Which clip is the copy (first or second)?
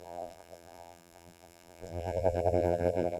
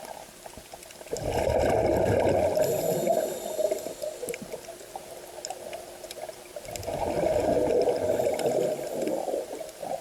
first